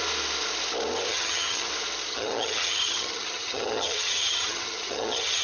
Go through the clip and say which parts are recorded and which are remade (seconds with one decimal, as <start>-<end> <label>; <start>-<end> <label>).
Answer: 0.0-1.1 recorded; 1.1-1.7 remade; 1.7-2.1 recorded; 2.1-5.4 remade